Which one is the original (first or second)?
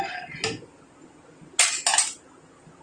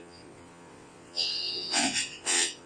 first